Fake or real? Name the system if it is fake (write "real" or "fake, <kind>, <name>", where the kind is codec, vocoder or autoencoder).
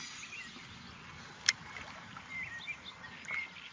real